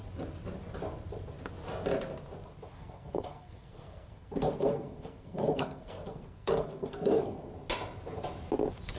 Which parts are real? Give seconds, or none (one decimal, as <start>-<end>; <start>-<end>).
0.0-2.7; 7.5-9.0